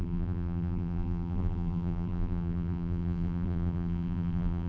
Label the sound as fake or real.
fake